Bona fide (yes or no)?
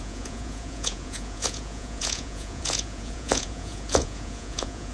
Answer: no